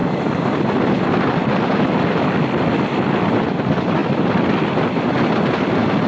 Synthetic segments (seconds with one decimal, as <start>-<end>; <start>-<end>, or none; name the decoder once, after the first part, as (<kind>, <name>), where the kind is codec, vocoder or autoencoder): none